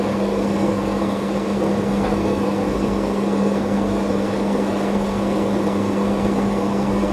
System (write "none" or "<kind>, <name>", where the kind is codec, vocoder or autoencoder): codec, SNAC